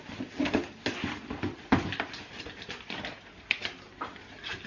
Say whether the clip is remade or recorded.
recorded